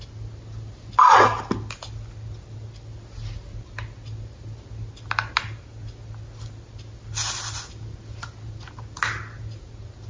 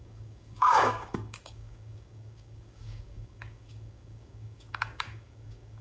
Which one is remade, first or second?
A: second